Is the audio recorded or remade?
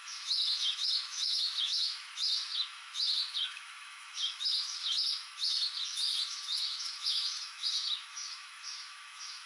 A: remade